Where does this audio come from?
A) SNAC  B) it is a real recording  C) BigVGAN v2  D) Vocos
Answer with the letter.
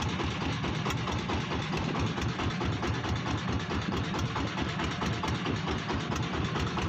B